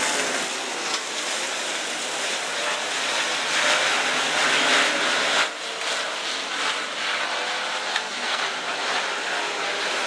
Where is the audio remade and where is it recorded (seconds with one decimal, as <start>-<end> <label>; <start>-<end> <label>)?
0.0-7.9 recorded; 7.9-8.4 remade; 8.4-10.1 recorded